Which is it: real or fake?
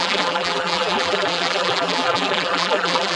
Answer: fake